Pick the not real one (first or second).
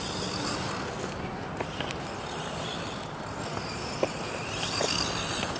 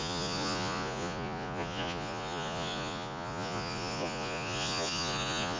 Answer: second